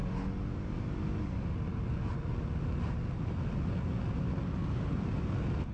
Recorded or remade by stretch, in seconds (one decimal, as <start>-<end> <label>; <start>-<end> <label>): 0.0-5.7 recorded